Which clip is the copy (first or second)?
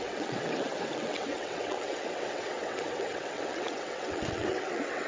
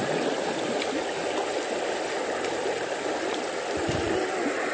first